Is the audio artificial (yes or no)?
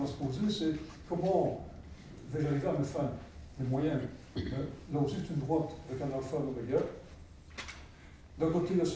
no